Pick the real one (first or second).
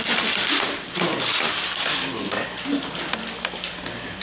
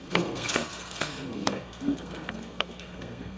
first